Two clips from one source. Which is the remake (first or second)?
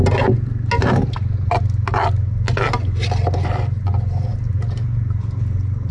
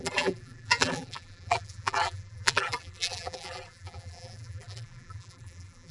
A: second